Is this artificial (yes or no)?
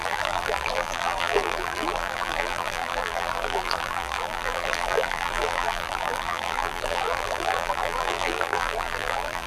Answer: yes